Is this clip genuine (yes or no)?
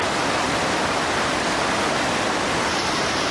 yes